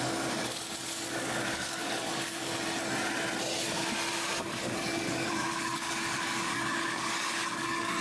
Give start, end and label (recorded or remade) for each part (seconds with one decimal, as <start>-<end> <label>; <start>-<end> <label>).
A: 0.0-2.5 remade; 2.5-4.1 recorded; 4.1-8.0 remade